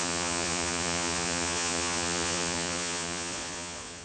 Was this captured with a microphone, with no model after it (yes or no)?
no